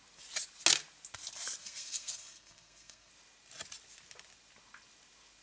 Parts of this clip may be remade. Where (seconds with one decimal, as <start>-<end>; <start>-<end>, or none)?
1.6-3.1